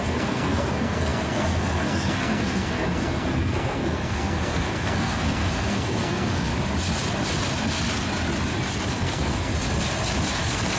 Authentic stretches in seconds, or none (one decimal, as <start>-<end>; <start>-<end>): 6.5-8.9; 9.5-10.4